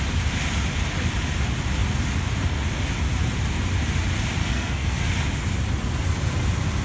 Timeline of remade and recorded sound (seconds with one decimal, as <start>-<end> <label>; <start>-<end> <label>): 0.0-4.4 recorded; 4.4-5.1 remade; 5.1-6.8 recorded